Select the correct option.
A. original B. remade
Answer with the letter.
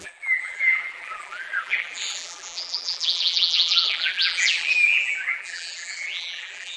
B